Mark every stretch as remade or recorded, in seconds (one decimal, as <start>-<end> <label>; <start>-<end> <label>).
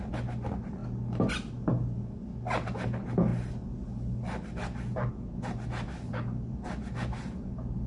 0.0-7.9 recorded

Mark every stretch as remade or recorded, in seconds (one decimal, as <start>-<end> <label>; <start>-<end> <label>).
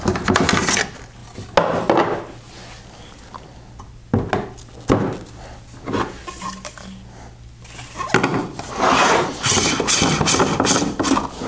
0.0-11.5 recorded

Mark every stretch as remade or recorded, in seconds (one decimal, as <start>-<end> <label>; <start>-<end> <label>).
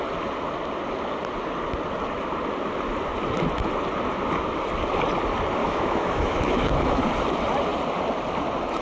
0.0-5.6 recorded; 5.6-7.0 remade; 7.0-8.8 recorded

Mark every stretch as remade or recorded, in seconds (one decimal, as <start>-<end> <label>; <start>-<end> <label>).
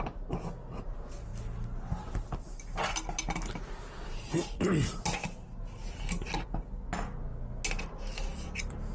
0.0-8.9 recorded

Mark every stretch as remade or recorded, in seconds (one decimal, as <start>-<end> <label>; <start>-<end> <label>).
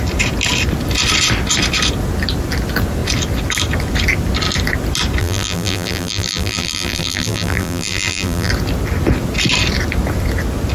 0.0-5.2 recorded; 5.2-8.5 remade; 8.5-10.7 recorded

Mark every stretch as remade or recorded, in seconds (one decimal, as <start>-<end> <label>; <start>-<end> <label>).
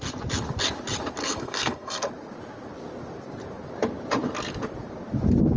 0.0-1.2 recorded; 1.2-2.1 remade; 2.1-5.6 recorded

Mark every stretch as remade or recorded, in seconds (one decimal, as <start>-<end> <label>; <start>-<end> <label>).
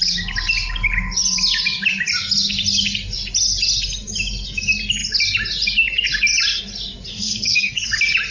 0.0-7.1 recorded; 7.1-7.9 remade; 7.9-8.3 recorded